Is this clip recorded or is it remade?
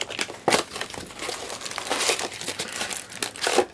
recorded